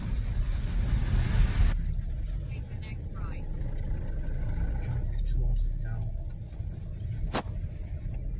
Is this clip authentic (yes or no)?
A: yes